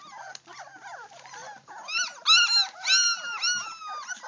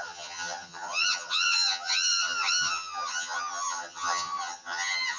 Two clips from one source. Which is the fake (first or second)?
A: second